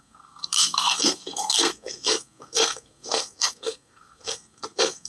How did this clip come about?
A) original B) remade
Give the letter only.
B